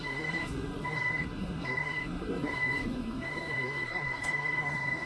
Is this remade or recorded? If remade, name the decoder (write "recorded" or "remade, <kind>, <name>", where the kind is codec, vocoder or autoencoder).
remade, codec, SNAC